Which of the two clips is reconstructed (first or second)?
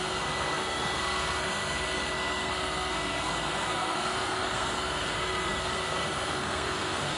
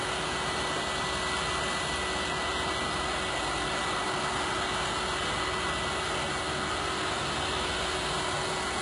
first